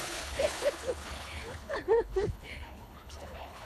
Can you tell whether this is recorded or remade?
remade